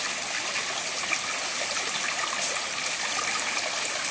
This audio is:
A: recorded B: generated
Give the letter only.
A